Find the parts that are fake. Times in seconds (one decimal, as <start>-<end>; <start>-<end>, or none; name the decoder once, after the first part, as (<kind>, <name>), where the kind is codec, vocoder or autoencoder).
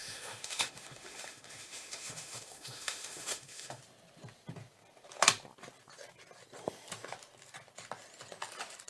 0.0-3.8 (autoencoder, DAC-VAE)